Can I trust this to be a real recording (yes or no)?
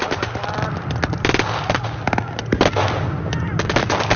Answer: yes